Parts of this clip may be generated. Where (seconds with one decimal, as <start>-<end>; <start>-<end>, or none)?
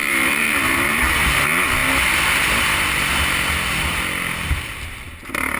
0.0-1.0